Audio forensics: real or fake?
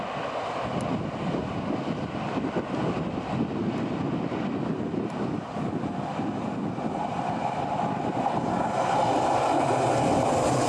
real